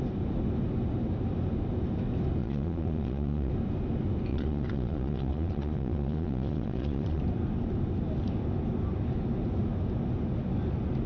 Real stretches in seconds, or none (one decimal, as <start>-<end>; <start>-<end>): 0.0-2.4; 3.5-4.3; 7.2-11.1